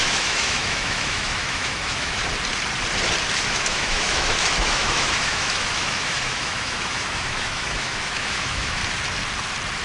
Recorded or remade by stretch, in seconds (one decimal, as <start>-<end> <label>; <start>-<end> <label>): 0.0-2.2 remade; 2.2-3.5 recorded; 3.5-8.8 remade; 8.8-9.8 recorded